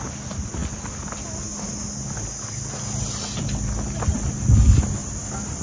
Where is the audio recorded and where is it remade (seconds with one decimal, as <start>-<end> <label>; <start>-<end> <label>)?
0.0-5.0 recorded; 5.0-5.6 remade